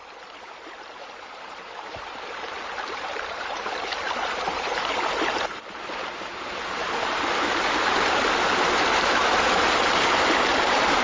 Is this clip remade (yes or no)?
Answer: yes